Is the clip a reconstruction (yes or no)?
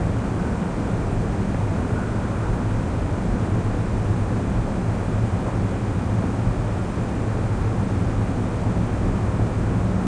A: no